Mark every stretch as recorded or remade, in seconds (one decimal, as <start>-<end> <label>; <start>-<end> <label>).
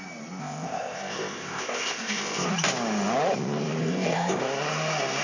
0.0-0.4 recorded; 0.4-2.5 remade; 2.5-3.8 recorded; 3.8-4.4 remade; 4.4-5.2 recorded